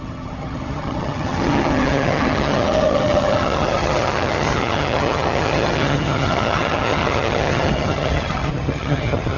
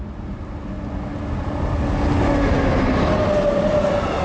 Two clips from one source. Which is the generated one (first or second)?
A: first